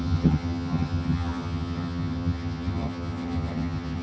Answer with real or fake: fake